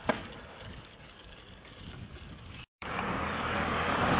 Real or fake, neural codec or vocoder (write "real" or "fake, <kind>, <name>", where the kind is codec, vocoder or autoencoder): fake, codec, DAC